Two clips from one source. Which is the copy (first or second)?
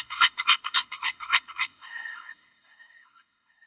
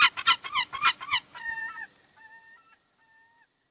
first